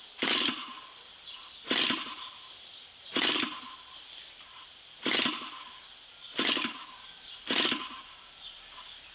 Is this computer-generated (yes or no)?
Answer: yes